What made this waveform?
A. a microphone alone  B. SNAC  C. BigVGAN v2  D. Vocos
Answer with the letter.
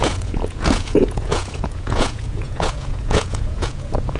D